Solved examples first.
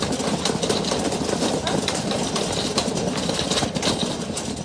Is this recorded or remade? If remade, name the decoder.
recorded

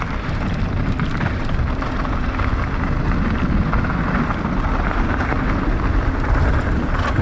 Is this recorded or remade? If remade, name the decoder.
recorded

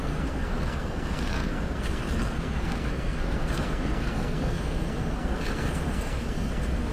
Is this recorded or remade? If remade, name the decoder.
remade, codec, SNAC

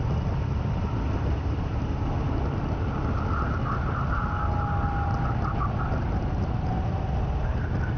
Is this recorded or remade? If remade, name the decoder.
recorded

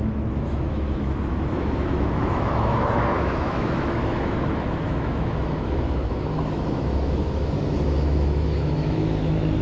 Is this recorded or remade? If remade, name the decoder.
remade, autoencoder, DAC-VAE